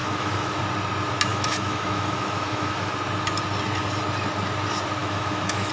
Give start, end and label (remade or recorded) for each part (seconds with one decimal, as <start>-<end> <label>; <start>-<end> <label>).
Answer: 0.0-0.6 remade; 0.6-1.3 recorded; 1.3-2.9 remade; 2.9-5.0 recorded; 5.0-5.7 remade